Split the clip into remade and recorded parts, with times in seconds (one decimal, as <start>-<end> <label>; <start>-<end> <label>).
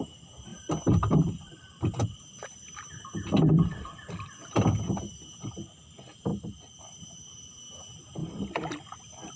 0.0-0.5 recorded; 0.5-5.0 remade; 5.0-9.4 recorded